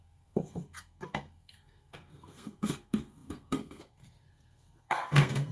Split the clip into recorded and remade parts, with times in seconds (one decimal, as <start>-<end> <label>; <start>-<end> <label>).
0.0-5.5 remade